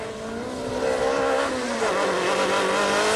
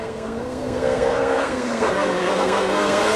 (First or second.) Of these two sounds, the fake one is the second